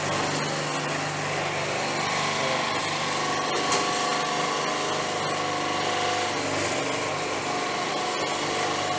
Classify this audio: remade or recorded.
recorded